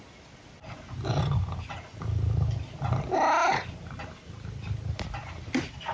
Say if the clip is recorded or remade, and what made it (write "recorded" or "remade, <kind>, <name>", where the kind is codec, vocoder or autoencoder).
recorded